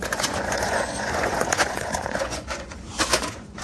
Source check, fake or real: fake